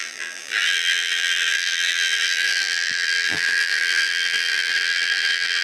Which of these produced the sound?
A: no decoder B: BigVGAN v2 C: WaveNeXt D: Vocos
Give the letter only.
B